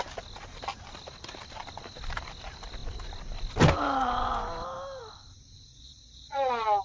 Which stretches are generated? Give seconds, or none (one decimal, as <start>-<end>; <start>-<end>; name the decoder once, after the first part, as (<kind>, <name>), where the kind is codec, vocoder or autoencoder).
5.7-6.8 (vocoder, Vocos)